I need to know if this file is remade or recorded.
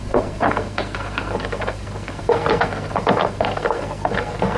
remade